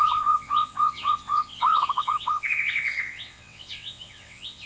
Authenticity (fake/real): fake